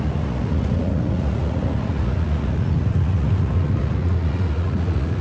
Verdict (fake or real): fake